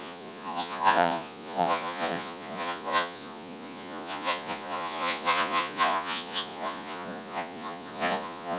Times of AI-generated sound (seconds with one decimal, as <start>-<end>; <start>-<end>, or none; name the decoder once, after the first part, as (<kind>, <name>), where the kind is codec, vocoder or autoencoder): 0.0-8.6 (vocoder, Vocos)